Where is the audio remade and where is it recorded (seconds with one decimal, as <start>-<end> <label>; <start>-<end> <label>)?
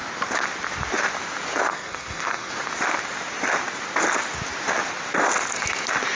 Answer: 0.0-1.7 recorded; 1.7-2.5 remade; 2.5-6.1 recorded